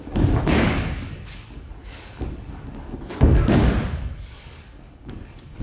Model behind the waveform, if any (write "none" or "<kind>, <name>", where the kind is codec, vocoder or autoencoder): codec, DAC